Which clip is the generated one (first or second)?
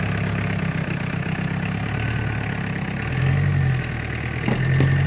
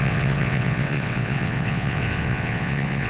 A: second